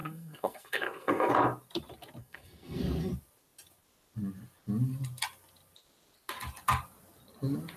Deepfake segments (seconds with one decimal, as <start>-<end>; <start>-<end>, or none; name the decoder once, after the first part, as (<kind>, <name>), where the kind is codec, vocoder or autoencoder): 0.0-1.3 (codec, SNAC); 2.2-3.1